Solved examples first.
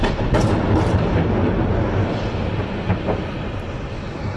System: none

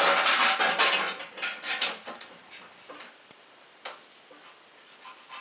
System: none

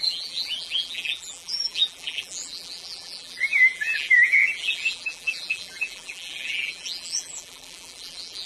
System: vocoder, BigVGAN v2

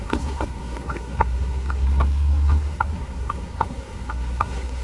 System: codec, SNAC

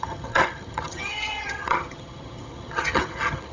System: vocoder, HiFi-GAN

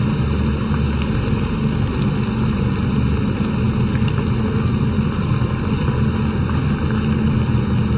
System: none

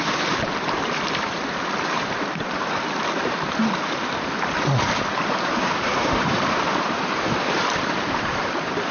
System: vocoder, BigVGAN v2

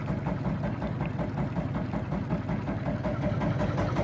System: none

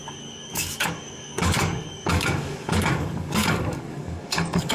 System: codec, DAC